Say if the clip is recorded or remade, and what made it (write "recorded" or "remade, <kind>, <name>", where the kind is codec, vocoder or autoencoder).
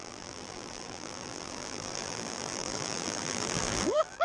remade, vocoder, BigVGAN v2